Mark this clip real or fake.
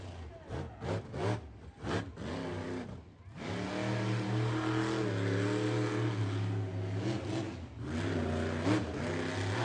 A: real